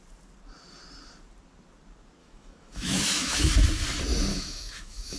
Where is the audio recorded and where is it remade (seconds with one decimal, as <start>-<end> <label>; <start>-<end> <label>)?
0.0-2.2 recorded; 2.2-3.5 remade; 3.5-4.3 recorded; 4.3-5.2 remade